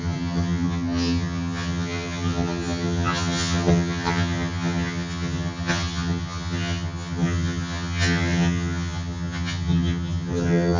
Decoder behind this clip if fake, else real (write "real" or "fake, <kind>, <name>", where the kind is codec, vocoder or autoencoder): fake, vocoder, HiFi-GAN